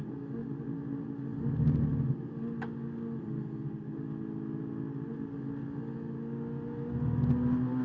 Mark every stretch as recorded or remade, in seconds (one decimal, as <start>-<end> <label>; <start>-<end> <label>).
0.0-7.8 recorded